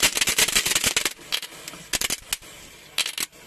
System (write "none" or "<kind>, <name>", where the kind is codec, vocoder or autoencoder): none